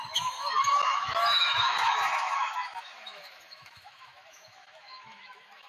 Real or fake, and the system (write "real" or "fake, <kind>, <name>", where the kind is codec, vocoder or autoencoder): fake, autoencoder, DAC-VAE